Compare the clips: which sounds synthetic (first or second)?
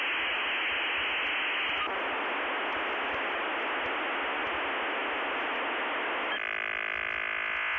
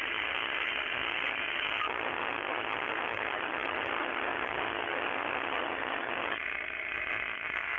second